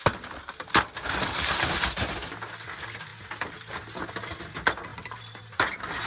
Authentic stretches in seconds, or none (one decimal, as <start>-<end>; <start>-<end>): 0.0-6.1